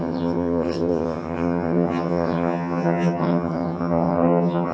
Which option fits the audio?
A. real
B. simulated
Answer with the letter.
B